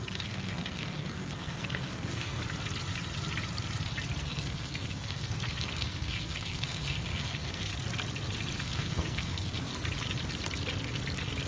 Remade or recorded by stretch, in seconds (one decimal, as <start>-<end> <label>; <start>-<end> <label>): 0.0-2.4 remade; 2.4-4.2 recorded; 4.2-7.7 remade; 7.7-8.6 recorded; 8.6-9.7 remade; 9.7-11.5 recorded